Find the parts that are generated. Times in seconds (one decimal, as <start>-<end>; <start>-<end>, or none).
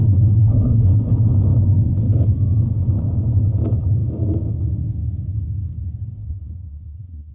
0.4-0.9; 6.2-7.3